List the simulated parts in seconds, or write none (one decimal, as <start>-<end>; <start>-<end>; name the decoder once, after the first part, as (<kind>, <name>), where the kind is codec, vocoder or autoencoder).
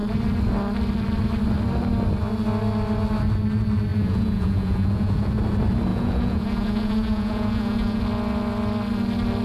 3.9-5.3 (vocoder, Vocos); 5.9-8.0